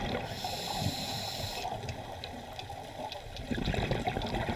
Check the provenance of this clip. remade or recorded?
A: remade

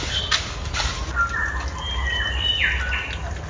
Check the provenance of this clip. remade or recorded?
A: recorded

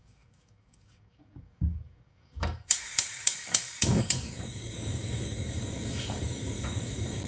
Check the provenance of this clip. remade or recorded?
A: remade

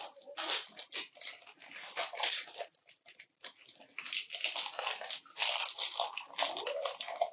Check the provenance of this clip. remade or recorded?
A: recorded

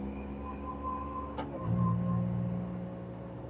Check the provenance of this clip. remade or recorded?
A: recorded